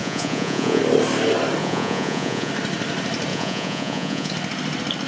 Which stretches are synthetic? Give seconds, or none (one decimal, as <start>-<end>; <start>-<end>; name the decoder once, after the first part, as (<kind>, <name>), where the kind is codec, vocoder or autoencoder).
0.0-0.8 (vocoder, Vocos); 1.6-2.5; 3.3-4.3